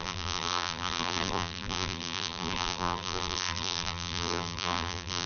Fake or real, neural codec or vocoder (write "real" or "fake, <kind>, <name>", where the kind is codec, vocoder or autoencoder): fake, vocoder, BigVGAN v2